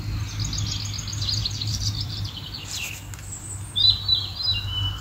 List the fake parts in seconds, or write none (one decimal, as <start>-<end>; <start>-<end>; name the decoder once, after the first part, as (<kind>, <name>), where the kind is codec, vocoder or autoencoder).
1.4-2.9 (vocoder, BigVGAN v2)

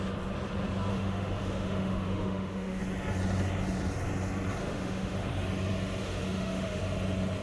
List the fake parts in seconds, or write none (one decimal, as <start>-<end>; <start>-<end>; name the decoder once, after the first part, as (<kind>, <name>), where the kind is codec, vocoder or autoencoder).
0.9-2.8 (autoencoder, DAC-VAE); 4.6-5.3; 6.0-6.8

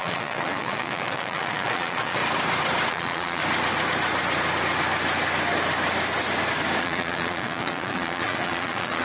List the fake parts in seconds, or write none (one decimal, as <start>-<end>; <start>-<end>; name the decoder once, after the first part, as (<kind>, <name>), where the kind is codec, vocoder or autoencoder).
0.0-2.2 (vocoder, Vocos); 2.9-3.4; 6.8-9.0

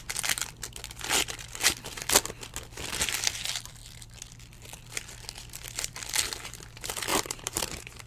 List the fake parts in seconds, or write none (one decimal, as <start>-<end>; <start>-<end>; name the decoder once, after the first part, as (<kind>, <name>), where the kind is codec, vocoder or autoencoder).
7.1-8.1 (vocoder, BigVGAN v2)

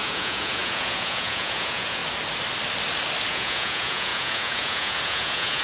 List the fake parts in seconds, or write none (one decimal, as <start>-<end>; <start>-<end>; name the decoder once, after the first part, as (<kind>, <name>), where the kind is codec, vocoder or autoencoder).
0.0-2.0 (vocoder, Vocos); 3.3-5.6

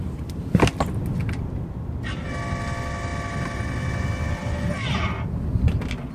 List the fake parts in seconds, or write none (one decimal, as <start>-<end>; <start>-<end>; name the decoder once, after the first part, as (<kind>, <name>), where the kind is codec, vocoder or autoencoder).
none

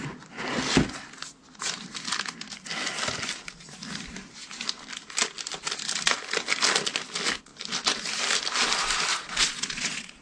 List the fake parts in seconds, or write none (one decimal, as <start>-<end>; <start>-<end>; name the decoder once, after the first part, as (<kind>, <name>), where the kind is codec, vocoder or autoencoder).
9.1-10.2 (vocoder, Vocos)

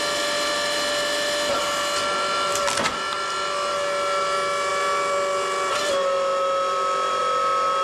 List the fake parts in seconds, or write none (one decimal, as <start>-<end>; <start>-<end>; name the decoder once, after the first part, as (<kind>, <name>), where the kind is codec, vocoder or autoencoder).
none